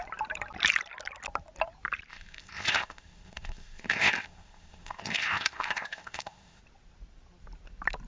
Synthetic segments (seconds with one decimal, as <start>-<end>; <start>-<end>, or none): 2.1-6.6